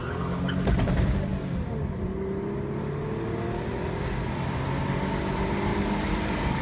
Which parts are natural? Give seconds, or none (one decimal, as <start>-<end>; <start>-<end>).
0.0-5.7